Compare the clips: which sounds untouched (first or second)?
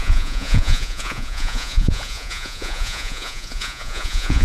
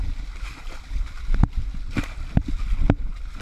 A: second